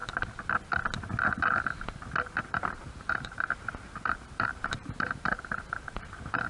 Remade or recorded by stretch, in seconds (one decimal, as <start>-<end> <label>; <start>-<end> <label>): 0.0-2.4 recorded; 2.4-6.5 remade